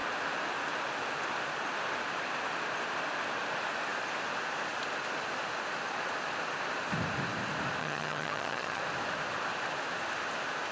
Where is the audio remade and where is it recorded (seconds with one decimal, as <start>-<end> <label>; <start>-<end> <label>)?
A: 0.0-7.8 recorded; 7.8-8.8 remade; 8.8-10.7 recorded